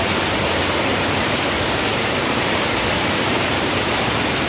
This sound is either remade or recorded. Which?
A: remade